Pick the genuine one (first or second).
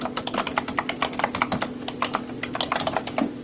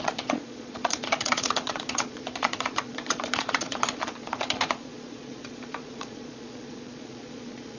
first